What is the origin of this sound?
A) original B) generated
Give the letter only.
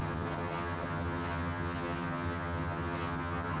B